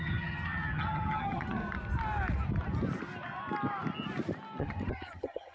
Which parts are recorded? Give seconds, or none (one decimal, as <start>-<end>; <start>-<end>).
1.6-4.6